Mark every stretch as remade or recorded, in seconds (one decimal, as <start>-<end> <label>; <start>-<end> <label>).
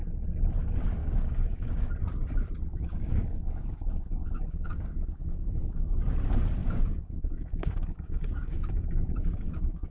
0.0-1.0 recorded; 1.0-1.9 remade; 1.9-2.7 recorded; 2.7-6.0 remade; 6.0-6.6 recorded; 6.6-9.9 remade